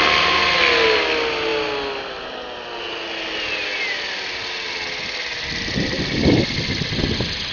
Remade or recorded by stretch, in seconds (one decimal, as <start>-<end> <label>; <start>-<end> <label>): 0.0-7.5 recorded